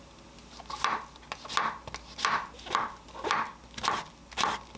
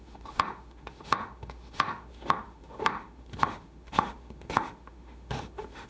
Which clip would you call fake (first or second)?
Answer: second